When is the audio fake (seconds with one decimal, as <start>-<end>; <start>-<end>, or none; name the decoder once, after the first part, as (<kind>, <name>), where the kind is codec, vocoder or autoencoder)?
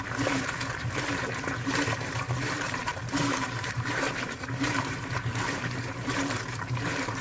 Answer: 0.0-7.2 (vocoder, BigVGAN v2)